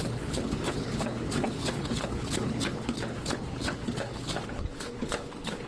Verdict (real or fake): fake